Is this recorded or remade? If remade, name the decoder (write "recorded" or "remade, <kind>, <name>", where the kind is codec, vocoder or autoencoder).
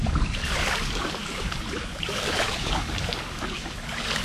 remade, codec, DAC